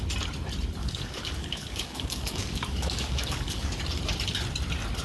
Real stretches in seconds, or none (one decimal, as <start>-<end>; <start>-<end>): 0.0-0.8; 3.8-5.0